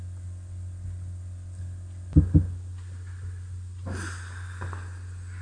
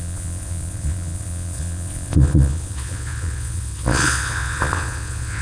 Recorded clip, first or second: first